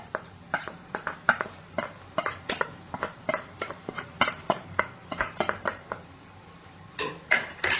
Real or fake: fake